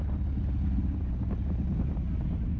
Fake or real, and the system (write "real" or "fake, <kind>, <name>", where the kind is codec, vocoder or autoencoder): real